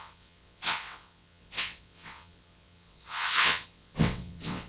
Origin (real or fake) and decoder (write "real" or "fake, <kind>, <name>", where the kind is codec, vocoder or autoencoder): fake, vocoder, WaveNeXt